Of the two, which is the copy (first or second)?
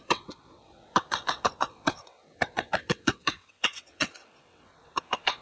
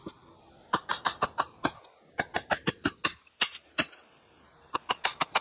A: first